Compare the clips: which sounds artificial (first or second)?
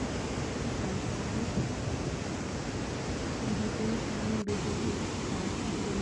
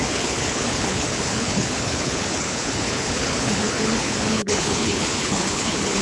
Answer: second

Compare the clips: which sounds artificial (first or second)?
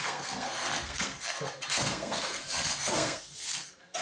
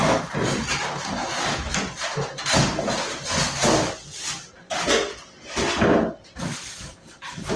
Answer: first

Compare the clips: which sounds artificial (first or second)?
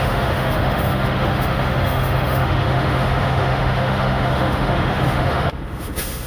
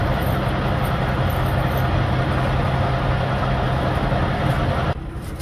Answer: first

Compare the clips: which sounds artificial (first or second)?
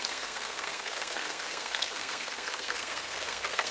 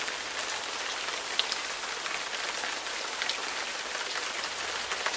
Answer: first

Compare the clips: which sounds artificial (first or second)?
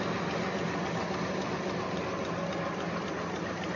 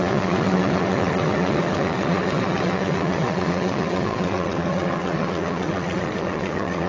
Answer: second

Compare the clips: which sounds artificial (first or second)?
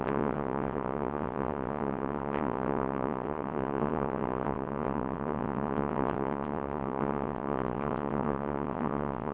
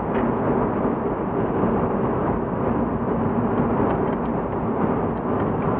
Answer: first